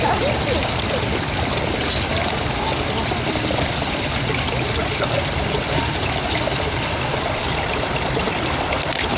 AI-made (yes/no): yes